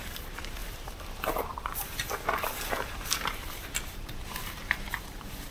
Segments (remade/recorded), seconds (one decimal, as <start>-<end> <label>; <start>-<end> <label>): 0.0-5.5 remade

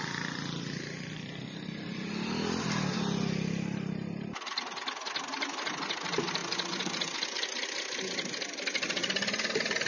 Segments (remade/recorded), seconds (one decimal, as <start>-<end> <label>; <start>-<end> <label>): 0.0-9.9 recorded

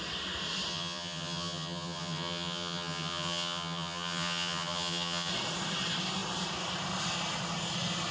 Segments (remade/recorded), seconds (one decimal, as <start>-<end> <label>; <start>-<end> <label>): 0.0-0.7 recorded; 0.7-5.3 remade; 5.3-8.1 recorded

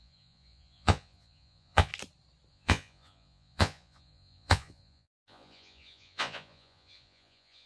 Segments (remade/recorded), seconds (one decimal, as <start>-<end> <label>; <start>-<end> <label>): 0.0-1.9 remade; 1.9-2.5 recorded; 2.5-7.7 remade